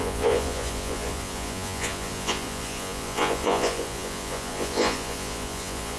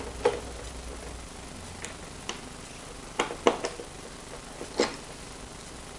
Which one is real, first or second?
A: second